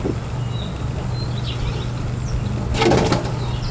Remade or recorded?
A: recorded